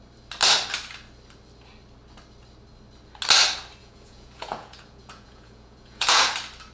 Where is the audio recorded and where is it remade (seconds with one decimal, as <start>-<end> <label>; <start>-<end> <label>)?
0.0-3.8 recorded; 3.8-6.3 remade; 6.3-6.7 recorded